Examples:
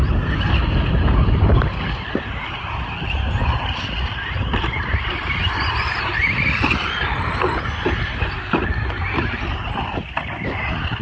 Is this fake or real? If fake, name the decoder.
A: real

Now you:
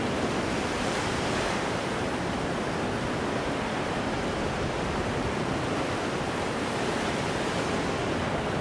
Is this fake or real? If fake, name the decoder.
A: real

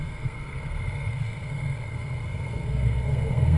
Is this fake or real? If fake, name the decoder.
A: fake, codec, SNAC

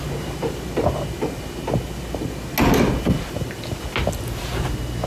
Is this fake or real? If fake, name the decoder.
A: real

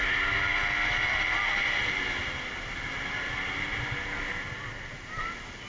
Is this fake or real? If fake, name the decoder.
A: real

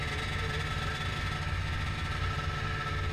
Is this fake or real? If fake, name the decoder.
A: real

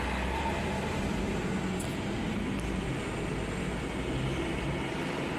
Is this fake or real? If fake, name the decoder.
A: real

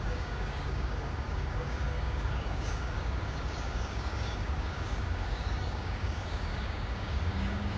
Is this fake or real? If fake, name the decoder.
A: fake, codec, DAC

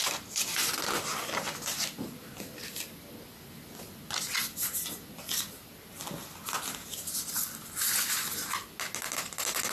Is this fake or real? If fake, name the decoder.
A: real